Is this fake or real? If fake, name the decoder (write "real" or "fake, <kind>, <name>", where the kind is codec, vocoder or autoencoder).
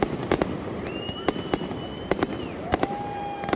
real